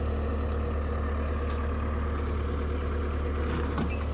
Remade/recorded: recorded